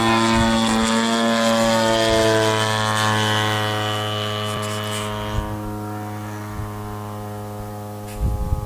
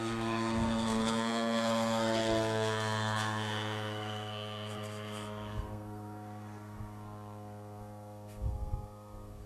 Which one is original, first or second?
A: first